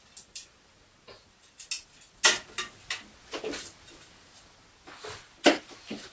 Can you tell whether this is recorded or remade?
recorded